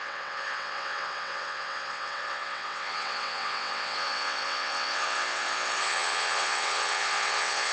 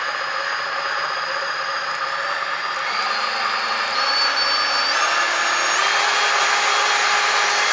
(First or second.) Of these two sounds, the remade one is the first